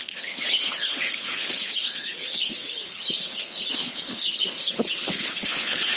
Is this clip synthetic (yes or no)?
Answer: yes